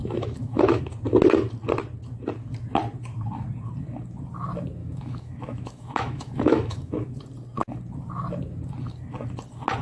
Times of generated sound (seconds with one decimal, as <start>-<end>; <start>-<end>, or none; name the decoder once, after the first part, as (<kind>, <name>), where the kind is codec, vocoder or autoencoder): 0.0-0.8 (autoencoder, DAC-VAE); 4.8-7.1